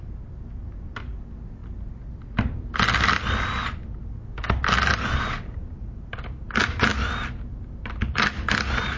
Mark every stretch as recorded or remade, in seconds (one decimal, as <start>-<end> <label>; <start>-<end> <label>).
0.0-4.9 recorded; 4.9-5.7 remade; 5.7-9.0 recorded